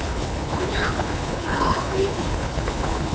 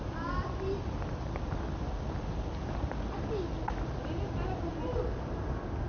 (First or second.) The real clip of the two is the second